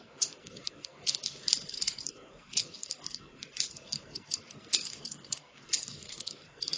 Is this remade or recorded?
remade